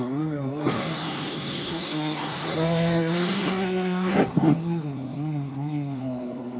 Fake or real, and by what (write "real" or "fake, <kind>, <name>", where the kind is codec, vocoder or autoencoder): fake, codec, SNAC